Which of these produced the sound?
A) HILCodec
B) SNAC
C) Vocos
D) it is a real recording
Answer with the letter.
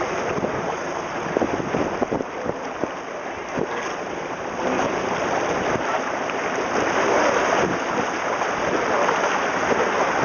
D